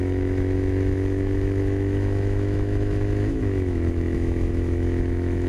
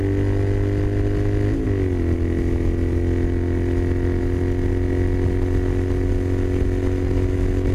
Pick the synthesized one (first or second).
first